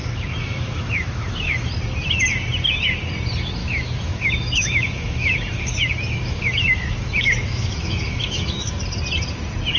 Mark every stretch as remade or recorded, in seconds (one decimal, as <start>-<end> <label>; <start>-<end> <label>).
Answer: 0.0-1.7 remade; 1.7-3.6 recorded; 3.6-8.7 remade; 8.7-9.8 recorded